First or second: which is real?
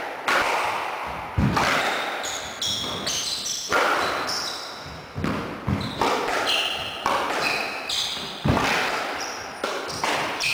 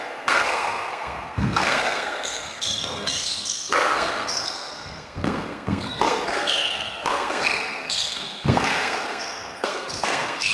first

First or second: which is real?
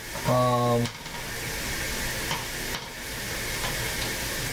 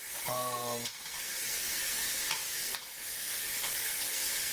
first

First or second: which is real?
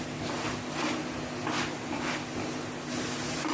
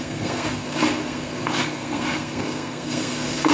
first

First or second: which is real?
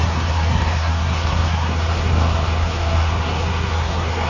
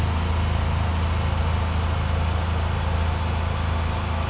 second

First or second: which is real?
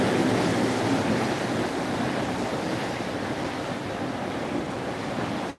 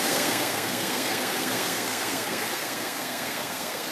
first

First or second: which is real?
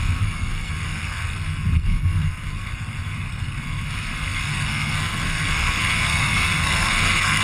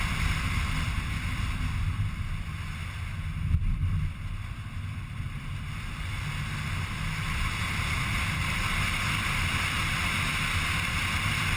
second